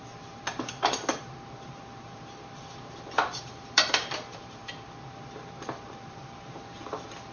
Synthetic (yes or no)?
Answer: yes